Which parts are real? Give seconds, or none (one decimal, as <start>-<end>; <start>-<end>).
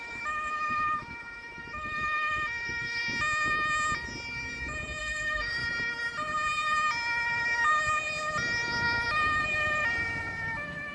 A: 3.0-5.0; 5.6-10.2